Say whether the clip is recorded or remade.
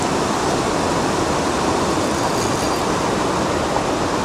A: recorded